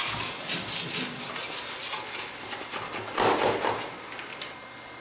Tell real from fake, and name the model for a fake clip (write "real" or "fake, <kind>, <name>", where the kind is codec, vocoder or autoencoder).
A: real